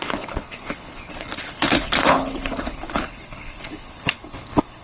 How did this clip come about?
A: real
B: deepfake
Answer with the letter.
B